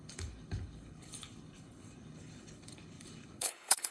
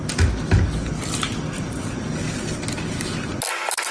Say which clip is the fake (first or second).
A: first